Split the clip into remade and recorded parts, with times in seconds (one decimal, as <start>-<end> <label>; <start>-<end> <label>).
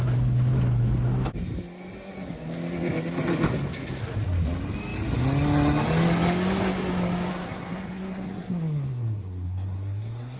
0.0-7.3 recorded; 7.3-10.4 remade